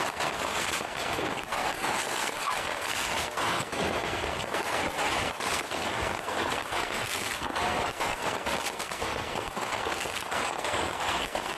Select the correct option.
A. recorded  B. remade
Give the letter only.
B